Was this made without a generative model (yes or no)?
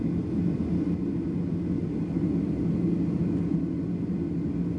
yes